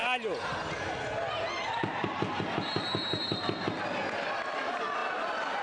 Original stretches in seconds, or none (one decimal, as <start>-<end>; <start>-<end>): 0.0-5.6